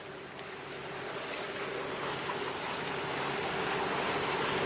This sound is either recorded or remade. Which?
recorded